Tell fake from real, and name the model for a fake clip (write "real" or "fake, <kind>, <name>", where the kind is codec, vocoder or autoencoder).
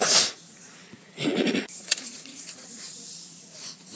fake, vocoder, Vocos